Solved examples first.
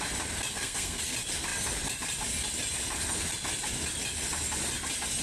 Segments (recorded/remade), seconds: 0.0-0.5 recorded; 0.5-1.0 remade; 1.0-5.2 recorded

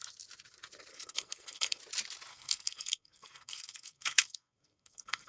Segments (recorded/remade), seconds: 0.0-0.9 recorded; 0.9-1.8 remade; 1.8-2.3 recorded; 2.3-5.3 remade